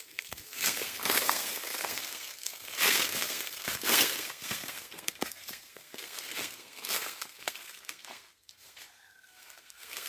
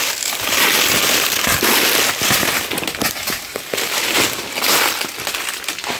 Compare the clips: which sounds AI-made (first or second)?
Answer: first